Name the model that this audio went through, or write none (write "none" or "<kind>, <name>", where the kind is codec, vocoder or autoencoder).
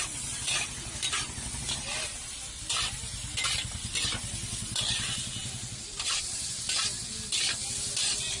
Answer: none